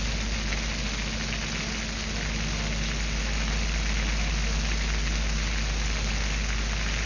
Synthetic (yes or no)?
no